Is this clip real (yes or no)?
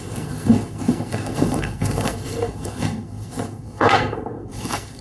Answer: no